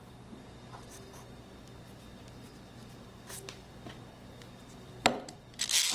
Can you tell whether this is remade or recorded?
recorded